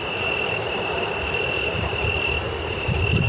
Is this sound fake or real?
real